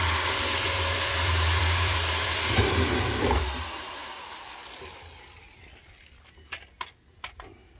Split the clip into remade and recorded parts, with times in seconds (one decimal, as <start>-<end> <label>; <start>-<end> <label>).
0.0-4.0 remade; 4.0-7.8 recorded